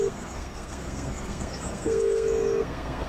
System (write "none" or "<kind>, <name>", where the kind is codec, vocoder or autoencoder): codec, SNAC